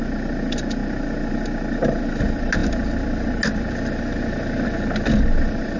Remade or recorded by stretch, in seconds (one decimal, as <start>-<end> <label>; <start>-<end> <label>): 0.0-5.8 recorded